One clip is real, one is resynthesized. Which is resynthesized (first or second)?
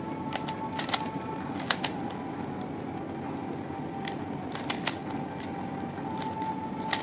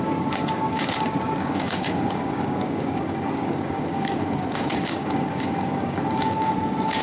second